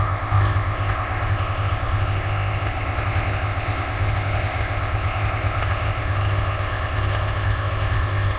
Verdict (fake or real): fake